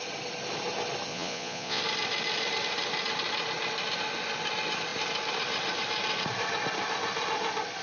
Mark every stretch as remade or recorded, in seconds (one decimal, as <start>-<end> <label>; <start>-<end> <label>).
0.0-1.1 recorded; 1.1-1.8 remade; 1.8-7.8 recorded